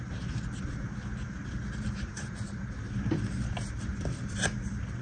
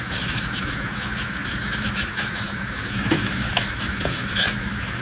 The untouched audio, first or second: first